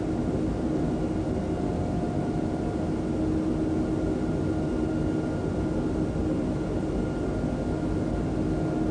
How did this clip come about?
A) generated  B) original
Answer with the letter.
B